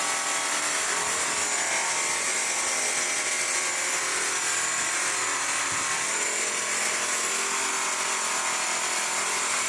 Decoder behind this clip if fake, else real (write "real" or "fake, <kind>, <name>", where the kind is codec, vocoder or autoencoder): real